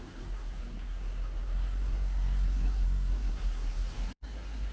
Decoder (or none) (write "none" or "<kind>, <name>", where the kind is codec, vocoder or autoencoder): codec, SNAC